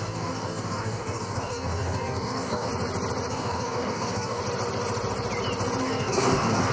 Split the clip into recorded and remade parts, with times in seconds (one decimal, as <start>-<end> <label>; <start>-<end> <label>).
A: 0.0-2.7 remade; 2.7-3.3 recorded; 3.3-4.4 remade; 4.4-5.8 recorded; 5.8-6.7 remade